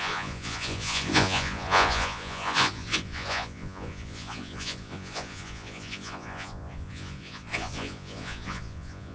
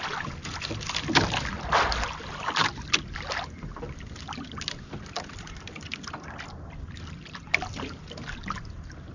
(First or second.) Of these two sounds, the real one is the second